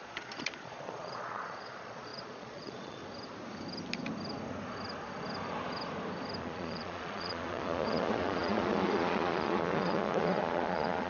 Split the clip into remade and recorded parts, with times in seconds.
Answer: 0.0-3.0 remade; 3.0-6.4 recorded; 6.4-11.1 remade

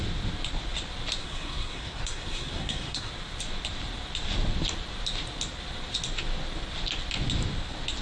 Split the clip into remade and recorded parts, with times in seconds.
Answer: 0.0-1.2 recorded; 1.2-3.1 remade; 3.1-8.0 recorded

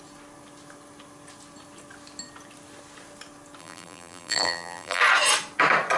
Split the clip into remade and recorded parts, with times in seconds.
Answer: 0.0-3.6 recorded; 3.6-5.0 remade; 5.0-6.0 recorded

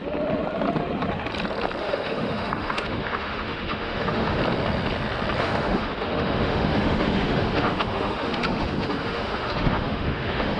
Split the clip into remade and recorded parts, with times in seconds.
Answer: 0.0-1.8 recorded; 1.8-4.4 remade; 4.4-5.4 recorded; 5.4-10.6 remade